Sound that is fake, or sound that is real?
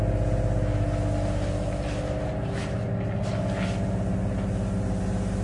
real